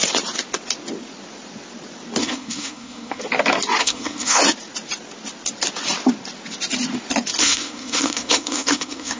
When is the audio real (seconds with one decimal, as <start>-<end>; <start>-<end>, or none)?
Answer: 0.0-2.2; 3.2-3.8; 4.4-7.4